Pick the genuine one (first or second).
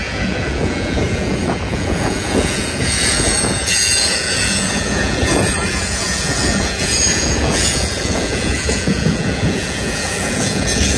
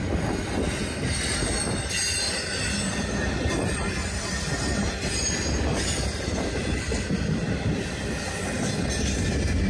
second